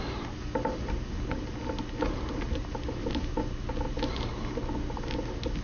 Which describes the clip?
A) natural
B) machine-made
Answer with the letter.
A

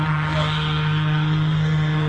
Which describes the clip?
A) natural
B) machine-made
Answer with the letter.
B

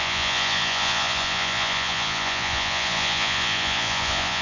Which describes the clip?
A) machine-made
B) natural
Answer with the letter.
A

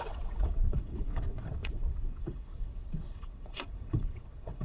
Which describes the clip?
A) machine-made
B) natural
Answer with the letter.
A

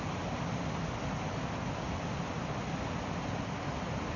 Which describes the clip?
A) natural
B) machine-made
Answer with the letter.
A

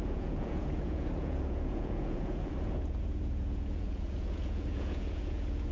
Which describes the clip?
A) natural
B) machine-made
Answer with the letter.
B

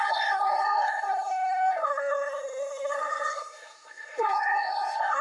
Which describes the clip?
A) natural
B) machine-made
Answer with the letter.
B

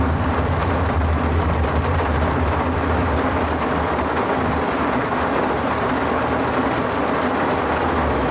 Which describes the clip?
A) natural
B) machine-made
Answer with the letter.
A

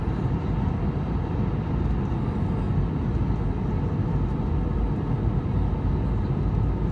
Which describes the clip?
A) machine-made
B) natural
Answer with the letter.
B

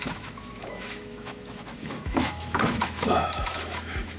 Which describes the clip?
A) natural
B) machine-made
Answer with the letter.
B